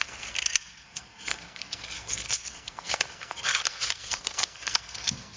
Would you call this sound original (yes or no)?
no